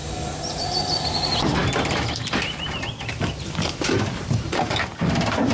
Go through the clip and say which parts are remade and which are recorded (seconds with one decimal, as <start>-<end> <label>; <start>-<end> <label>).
0.0-5.5 recorded